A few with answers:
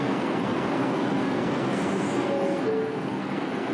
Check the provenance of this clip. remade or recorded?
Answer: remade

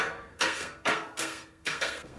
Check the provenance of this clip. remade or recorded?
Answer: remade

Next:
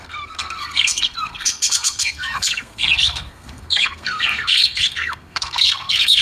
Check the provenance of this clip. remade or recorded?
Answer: remade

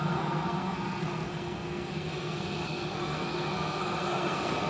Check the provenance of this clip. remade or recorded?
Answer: remade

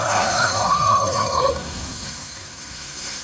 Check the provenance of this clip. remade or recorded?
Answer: remade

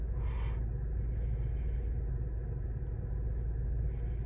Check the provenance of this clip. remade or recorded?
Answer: recorded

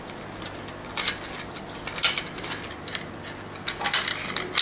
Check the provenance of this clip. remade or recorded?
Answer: recorded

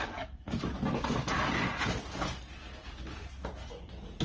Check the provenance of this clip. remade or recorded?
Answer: recorded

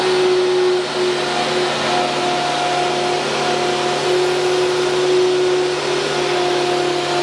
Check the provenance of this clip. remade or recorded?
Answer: recorded